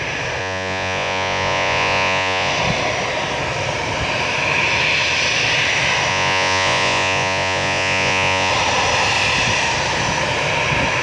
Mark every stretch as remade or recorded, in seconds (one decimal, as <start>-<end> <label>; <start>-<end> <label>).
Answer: 0.0-0.4 recorded; 0.4-2.5 remade; 2.5-6.1 recorded; 6.1-8.5 remade; 8.5-11.0 recorded